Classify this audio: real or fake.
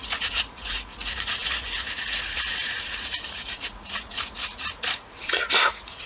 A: fake